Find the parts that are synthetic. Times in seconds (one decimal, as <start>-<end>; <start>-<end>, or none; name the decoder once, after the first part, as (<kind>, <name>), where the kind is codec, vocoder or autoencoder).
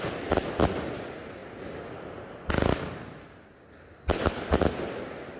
none